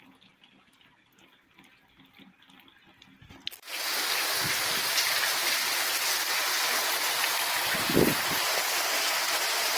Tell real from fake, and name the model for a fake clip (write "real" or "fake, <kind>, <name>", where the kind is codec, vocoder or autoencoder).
real